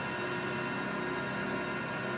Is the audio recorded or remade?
recorded